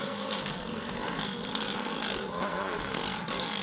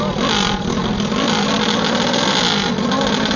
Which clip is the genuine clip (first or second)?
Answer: second